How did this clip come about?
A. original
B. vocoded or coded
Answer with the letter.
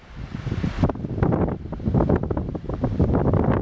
A